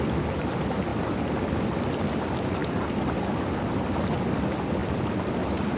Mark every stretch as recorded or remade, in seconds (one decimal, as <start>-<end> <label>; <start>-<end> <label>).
0.0-5.8 recorded